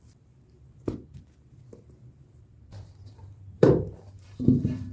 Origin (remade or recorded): remade